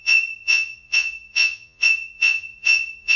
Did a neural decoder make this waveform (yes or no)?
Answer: yes